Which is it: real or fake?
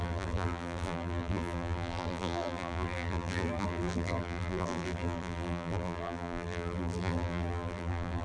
fake